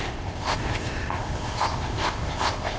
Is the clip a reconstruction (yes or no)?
yes